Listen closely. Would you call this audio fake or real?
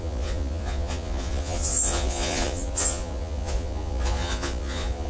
fake